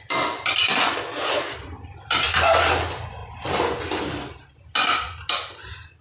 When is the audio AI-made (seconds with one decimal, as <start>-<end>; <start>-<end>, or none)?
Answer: none